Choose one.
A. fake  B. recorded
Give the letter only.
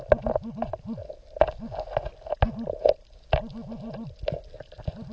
B